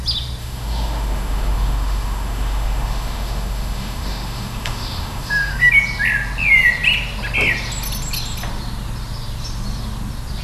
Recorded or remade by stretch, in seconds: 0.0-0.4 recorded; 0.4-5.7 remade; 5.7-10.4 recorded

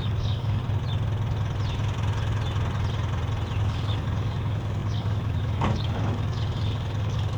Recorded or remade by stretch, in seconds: 0.0-0.6 remade; 0.6-3.6 recorded; 3.6-7.4 remade

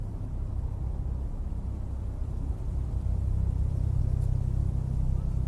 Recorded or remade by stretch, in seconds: 0.0-0.5 remade; 0.5-2.2 recorded; 2.2-4.0 remade; 4.0-4.6 recorded; 4.6-5.5 remade

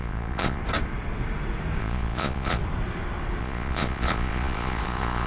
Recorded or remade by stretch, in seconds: 0.0-0.6 remade; 0.6-1.8 recorded; 1.8-2.6 remade; 2.6-3.4 recorded; 3.4-5.3 remade

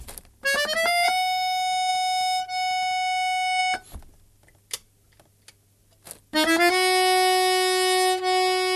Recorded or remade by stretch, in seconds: 0.0-8.8 recorded

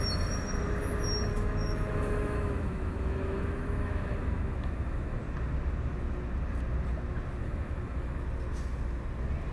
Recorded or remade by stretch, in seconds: 0.0-1.3 recorded; 1.3-5.2 remade; 5.2-7.4 recorded; 7.4-8.2 remade; 8.2-9.5 recorded

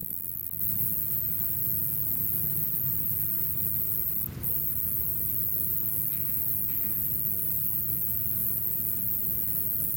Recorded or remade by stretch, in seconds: 0.0-0.6 remade; 0.6-10.0 recorded

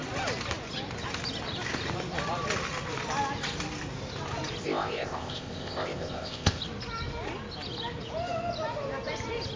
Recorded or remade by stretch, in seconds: 0.0-4.6 recorded; 4.6-6.6 remade; 6.6-9.6 recorded